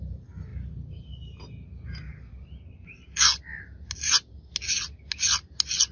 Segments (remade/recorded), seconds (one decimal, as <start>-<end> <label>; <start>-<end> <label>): 0.0-5.9 recorded